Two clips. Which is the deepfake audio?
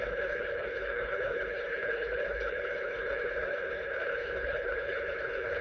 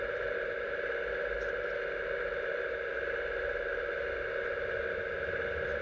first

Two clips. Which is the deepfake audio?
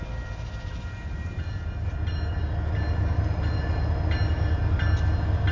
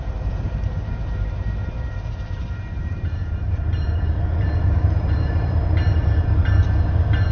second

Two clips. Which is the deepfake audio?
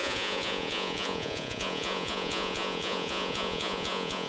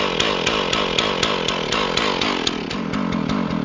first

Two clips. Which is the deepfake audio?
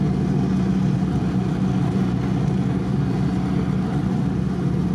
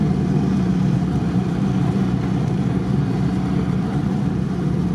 second